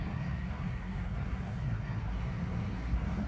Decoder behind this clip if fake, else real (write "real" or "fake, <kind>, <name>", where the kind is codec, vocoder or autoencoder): fake, codec, SNAC